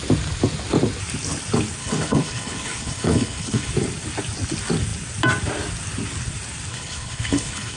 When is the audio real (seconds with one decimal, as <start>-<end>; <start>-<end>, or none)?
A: 0.0-1.8; 3.7-6.7